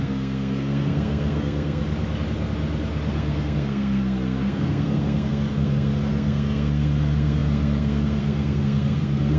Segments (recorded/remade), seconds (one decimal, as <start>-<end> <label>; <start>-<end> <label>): 0.0-1.8 remade; 1.8-3.1 recorded; 3.1-9.4 remade

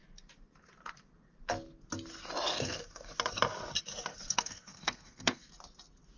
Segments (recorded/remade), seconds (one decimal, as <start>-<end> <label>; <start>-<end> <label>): 0.0-2.5 recorded; 2.5-3.1 remade; 3.1-4.1 recorded; 4.1-5.5 remade; 5.5-6.2 recorded

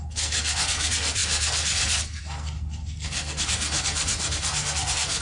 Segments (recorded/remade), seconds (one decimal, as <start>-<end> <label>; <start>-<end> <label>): 0.0-5.2 remade

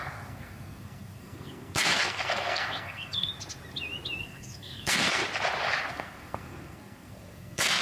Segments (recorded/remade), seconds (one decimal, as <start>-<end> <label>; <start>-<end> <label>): 0.0-3.3 remade; 3.3-4.2 recorded; 4.2-5.2 remade; 5.2-5.9 recorded; 5.9-7.8 remade

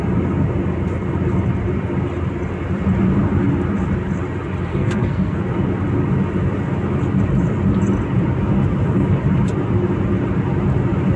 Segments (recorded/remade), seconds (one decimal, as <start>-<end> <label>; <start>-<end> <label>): 0.0-4.7 recorded; 4.7-5.4 remade; 5.4-11.2 recorded

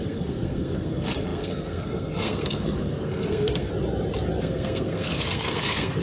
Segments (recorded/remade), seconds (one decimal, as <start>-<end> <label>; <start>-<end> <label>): 0.0-3.7 remade; 3.7-4.4 recorded; 4.4-6.0 remade

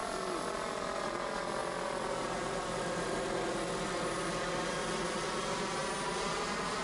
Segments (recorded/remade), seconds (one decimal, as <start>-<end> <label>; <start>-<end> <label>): 0.0-6.8 recorded

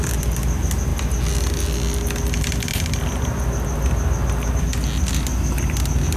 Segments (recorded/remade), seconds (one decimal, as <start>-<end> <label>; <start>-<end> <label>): 0.0-6.2 recorded